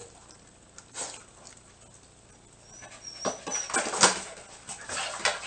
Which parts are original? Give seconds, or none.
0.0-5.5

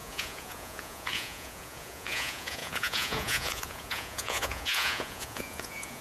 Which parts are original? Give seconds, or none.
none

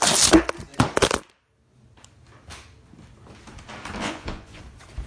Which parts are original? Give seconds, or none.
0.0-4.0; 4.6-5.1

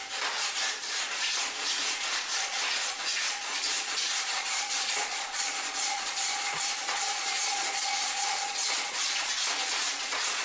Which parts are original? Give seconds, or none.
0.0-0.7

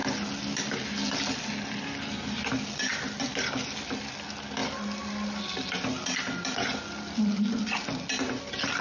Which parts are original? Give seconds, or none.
0.0-8.8

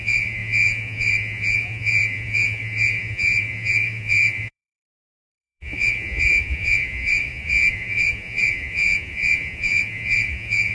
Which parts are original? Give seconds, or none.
none

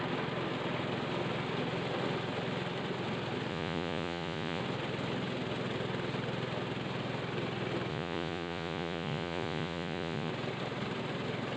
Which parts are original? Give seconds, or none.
0.0-3.5; 4.6-7.9; 10.3-11.6

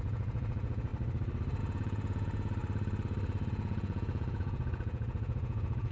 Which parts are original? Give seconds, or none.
0.9-1.6; 2.6-3.5